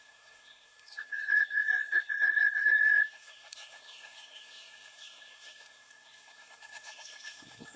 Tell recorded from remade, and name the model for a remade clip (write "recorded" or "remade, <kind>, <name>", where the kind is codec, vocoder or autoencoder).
remade, codec, SNAC